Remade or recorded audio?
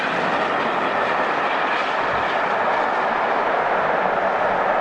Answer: recorded